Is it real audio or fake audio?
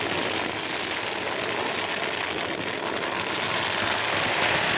real